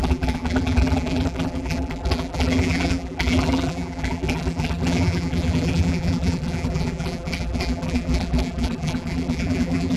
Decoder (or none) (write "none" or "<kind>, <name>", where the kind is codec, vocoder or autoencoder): vocoder, BigVGAN v2